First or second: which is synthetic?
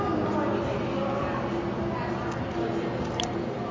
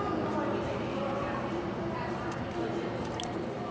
second